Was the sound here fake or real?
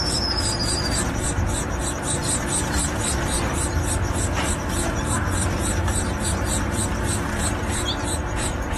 fake